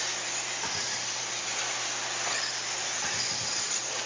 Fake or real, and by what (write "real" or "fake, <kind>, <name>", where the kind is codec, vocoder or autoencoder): real